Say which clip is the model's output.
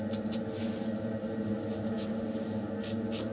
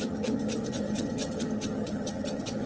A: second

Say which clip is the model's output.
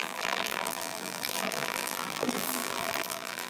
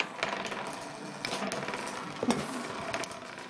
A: first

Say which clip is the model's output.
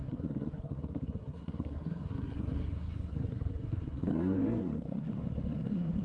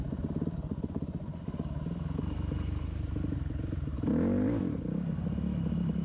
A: first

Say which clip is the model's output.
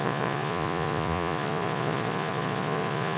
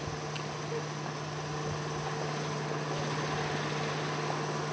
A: first